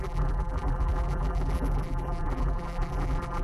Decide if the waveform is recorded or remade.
remade